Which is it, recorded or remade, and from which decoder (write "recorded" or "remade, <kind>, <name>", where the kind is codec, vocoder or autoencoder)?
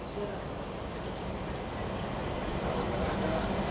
recorded